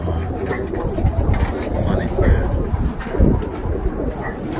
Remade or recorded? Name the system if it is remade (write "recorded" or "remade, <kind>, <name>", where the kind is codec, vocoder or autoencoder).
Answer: remade, vocoder, BigVGAN v2